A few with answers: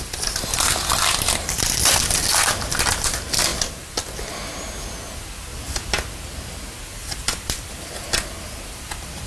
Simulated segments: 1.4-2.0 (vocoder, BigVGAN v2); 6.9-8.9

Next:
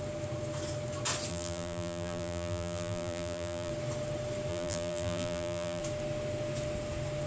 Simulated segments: 1.3-3.7 (vocoder, BigVGAN v2); 4.5-5.8

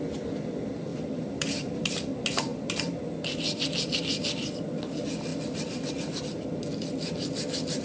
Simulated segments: 0.9-1.9 (vocoder, BigVGAN v2)

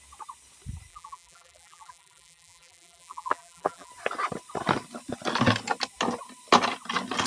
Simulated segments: 0.9-3.9 (vocoder, BigVGAN v2)

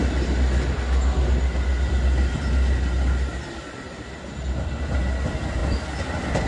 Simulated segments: none